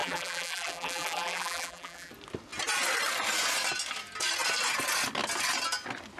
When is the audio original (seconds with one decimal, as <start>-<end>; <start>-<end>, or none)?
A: 2.1-6.2